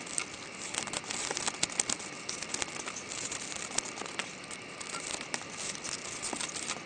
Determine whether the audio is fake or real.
real